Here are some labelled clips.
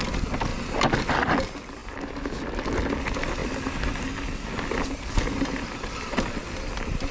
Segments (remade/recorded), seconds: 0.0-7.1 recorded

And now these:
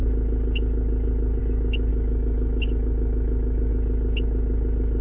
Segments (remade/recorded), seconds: 0.0-1.9 recorded; 1.9-3.7 remade; 3.7-5.0 recorded

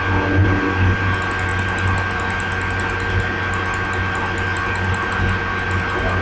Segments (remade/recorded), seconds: 0.0-6.2 recorded